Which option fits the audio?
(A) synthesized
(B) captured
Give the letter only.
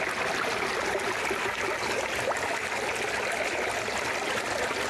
B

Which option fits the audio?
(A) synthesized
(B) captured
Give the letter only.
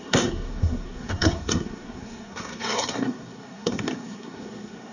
A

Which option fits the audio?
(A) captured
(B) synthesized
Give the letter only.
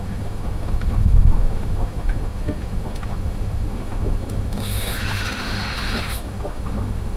B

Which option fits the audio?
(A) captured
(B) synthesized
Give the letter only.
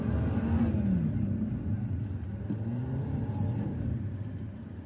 A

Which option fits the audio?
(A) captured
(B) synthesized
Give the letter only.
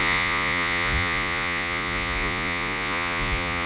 B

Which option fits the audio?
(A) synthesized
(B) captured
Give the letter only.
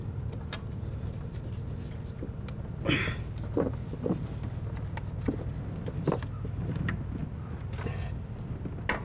B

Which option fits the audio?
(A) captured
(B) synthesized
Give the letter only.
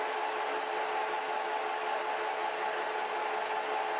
A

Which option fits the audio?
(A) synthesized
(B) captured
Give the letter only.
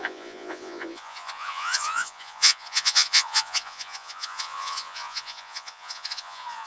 A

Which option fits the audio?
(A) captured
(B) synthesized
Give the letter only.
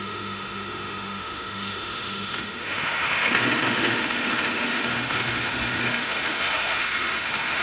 B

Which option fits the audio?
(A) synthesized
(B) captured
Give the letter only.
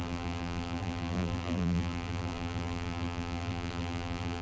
A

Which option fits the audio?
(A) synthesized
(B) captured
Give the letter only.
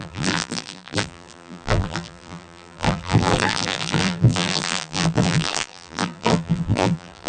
A